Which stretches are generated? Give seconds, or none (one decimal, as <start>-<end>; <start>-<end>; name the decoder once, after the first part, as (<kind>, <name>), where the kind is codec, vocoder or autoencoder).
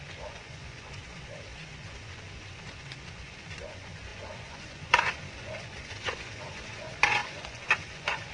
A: 0.0-8.3 (vocoder, Vocos)